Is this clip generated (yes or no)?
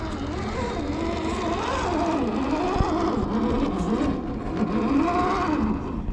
no